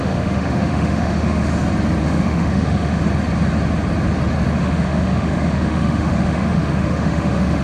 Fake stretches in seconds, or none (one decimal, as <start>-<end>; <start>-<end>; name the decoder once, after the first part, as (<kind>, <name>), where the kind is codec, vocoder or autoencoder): 0.0-1.5 (autoencoder, DAC-VAE); 2.0-3.0; 4.6-7.6